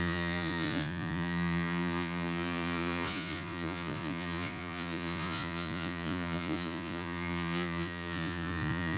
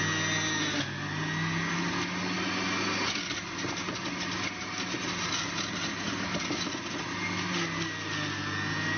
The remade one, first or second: first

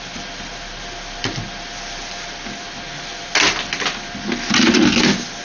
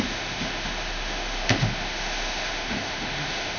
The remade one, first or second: second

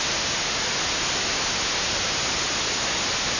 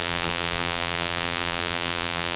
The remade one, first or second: second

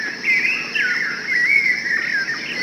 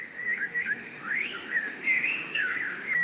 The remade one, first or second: second